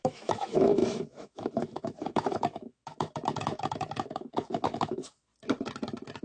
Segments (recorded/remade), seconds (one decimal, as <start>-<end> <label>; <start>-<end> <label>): 0.0-5.3 remade; 5.3-6.2 recorded